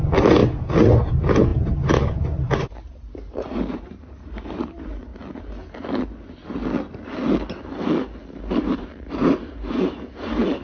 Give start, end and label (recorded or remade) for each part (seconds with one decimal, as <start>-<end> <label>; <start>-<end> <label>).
0.0-0.4 remade; 0.4-1.1 recorded; 1.1-5.1 remade; 5.1-8.4 recorded; 8.4-10.6 remade